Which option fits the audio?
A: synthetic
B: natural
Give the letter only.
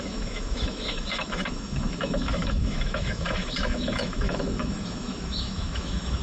A